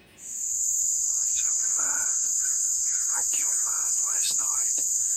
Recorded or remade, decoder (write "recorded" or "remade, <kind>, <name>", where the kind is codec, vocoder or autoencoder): remade, autoencoder, DAC-VAE